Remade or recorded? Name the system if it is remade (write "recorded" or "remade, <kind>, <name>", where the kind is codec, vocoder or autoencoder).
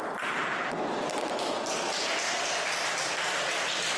remade, vocoder, BigVGAN v2